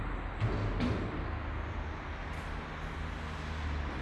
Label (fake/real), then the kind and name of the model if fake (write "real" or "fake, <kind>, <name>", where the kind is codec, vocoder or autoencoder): real